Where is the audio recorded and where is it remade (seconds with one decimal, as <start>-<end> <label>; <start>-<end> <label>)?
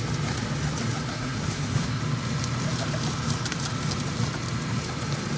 0.0-1.1 recorded; 1.1-2.0 remade; 2.0-5.4 recorded